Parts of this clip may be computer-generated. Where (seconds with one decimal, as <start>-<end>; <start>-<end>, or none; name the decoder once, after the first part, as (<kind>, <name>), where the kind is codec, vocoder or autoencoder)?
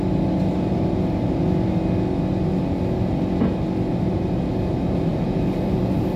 0.0-1.4 (vocoder, BigVGAN v2); 3.9-6.2